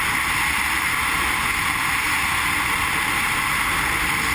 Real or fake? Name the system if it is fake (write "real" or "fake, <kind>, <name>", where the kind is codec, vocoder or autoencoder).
real